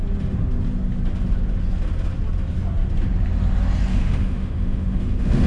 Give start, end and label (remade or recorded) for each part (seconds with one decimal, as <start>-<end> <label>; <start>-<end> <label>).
0.0-3.9 recorded; 3.9-5.5 remade